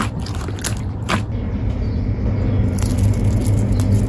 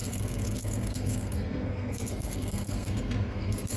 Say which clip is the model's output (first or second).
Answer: second